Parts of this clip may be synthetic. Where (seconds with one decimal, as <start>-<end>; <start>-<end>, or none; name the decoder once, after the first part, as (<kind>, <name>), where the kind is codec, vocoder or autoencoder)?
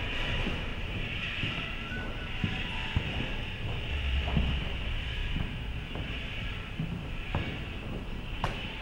0.0-3.3 (vocoder, BigVGAN v2); 4.6-8.8